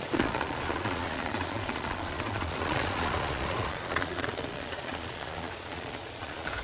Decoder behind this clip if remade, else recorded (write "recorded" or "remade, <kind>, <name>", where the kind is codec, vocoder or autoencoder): remade, vocoder, Vocos